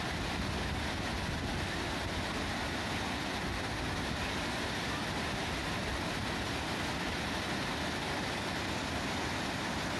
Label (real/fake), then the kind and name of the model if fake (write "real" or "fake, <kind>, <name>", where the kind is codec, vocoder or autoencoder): real